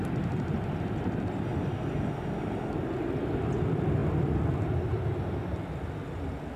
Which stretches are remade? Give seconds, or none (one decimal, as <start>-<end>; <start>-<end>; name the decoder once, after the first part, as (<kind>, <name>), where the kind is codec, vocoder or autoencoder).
none